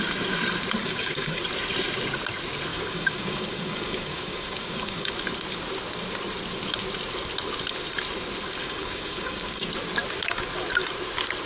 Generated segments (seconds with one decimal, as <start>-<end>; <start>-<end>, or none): 0.8-1.4; 2.7-5.1; 8.6-9.7